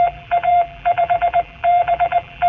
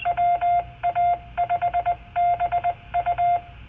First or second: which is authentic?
second